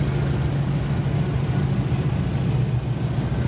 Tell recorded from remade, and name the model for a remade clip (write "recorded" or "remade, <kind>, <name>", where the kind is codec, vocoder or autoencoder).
recorded